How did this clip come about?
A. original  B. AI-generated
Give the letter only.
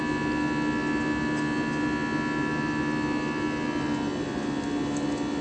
A